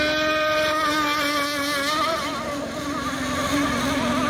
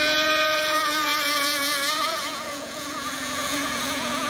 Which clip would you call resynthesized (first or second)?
second